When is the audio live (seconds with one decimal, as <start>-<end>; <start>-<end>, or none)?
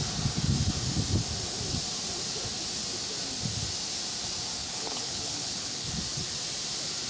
0.0-4.6; 6.0-7.1